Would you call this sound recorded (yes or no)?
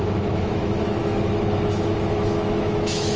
no